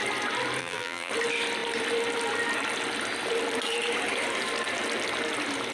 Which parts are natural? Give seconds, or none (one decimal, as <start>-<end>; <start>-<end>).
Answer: 0.0-0.6; 1.1-5.7